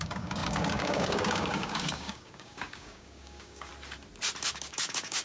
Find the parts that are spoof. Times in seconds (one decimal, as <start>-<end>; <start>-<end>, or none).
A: 0.0-3.7; 4.5-5.2